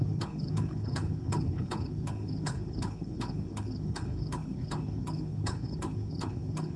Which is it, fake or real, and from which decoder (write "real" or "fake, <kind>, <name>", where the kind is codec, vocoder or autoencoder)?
fake, codec, HILCodec